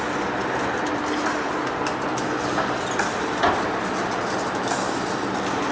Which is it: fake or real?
real